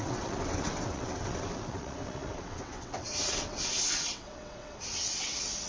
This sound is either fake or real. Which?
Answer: fake